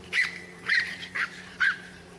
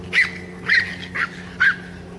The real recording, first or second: second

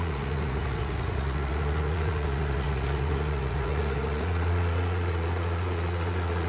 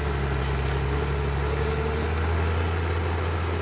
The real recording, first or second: second